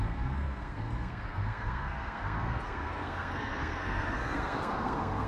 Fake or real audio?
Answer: fake